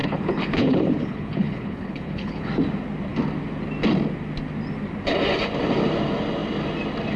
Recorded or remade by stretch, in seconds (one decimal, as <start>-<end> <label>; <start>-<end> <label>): 0.0-2.5 remade; 2.5-7.2 recorded